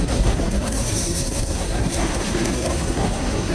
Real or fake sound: fake